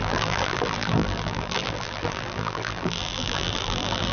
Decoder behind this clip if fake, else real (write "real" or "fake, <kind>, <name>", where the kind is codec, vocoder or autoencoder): fake, vocoder, BigVGAN v2